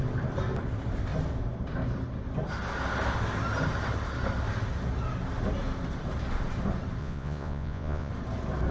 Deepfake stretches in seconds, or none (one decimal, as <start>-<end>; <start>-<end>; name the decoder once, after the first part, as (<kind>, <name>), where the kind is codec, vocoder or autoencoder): 7.0-8.1 (vocoder, Vocos)